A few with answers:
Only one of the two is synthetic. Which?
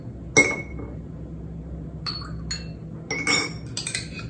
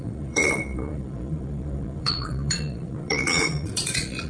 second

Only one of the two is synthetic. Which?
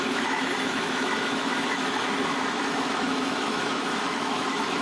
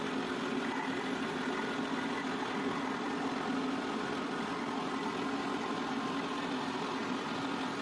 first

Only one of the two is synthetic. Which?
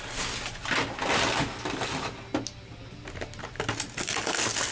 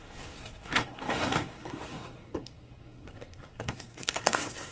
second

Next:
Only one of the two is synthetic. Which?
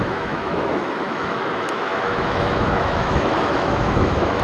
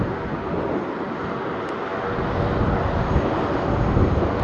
first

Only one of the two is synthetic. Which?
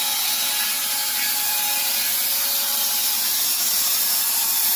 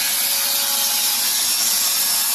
first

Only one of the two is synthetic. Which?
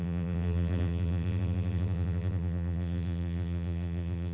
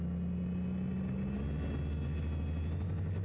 first